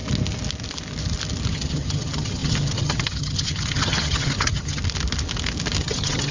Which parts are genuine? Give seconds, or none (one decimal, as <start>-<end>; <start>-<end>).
0.0-1.5; 4.8-5.8